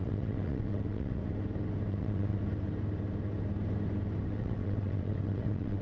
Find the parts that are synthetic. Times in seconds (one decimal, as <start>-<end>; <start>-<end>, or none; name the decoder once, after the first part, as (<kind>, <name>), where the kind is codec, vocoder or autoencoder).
0.0-1.2 (vocoder, WaveNeXt); 1.9-2.4; 4.3-5.8